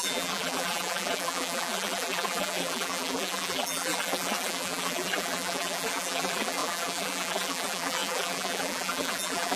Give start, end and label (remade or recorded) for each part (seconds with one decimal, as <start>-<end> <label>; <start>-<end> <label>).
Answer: 0.0-9.6 remade